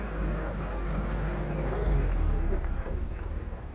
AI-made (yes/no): yes